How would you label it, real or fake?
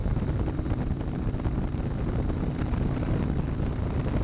real